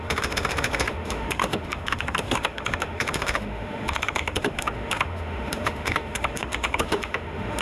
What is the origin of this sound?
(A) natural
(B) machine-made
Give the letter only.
B